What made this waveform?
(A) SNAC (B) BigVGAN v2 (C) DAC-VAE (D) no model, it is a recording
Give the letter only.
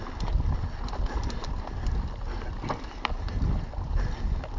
D